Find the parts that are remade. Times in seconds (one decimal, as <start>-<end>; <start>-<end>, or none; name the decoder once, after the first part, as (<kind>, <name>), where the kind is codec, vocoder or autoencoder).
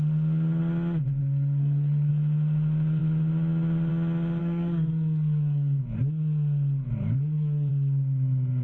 1.2-2.1 (codec, SNAC); 4.4-5.8; 7.1-7.7